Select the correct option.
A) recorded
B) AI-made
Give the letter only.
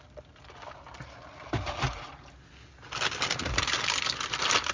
A